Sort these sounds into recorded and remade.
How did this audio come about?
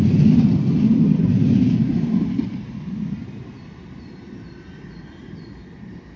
recorded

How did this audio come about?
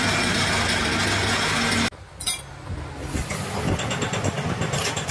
recorded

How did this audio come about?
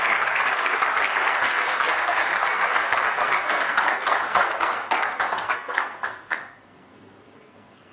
remade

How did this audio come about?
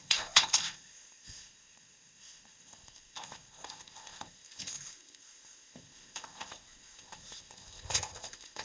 remade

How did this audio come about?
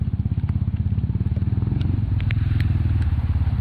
remade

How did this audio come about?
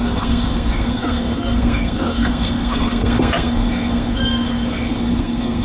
remade